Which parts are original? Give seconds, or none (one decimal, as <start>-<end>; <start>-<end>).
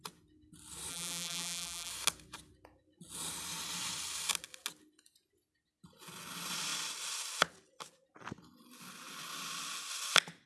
0.0-0.9; 1.9-10.5